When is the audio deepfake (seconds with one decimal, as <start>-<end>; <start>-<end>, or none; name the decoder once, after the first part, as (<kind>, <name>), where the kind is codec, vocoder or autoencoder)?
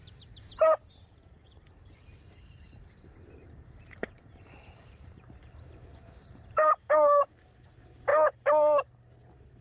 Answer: 0.0-8.1 (vocoder, BigVGAN v2)